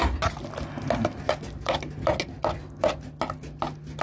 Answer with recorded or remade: recorded